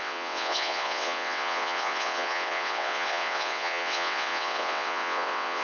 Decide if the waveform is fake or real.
fake